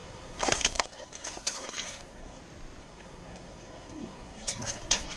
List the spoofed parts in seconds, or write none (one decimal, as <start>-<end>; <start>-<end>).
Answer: 0.0-2.4; 2.8-5.2